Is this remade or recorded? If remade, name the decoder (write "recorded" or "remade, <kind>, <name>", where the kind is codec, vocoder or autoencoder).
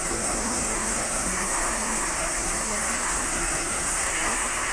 remade, codec, SNAC